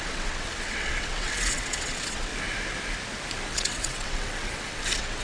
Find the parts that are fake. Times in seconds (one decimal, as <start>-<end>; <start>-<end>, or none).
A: 0.0-2.3; 3.5-5.2